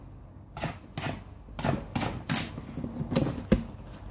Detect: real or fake real